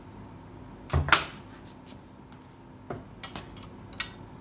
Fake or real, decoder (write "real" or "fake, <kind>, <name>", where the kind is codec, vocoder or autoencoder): real